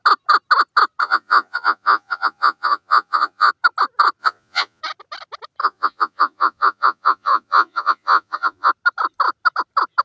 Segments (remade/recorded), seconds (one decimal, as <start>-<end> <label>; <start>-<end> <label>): 0.0-1.0 recorded; 1.0-3.5 remade; 3.5-4.2 recorded; 4.2-4.8 remade; 4.8-5.6 recorded; 5.6-8.7 remade; 8.7-10.0 recorded